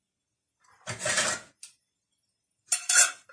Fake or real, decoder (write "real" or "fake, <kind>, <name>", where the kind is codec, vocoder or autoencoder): real